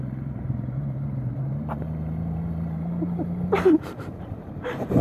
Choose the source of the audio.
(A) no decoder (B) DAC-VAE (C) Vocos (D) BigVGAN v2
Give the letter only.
D